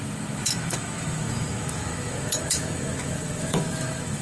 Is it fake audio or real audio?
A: fake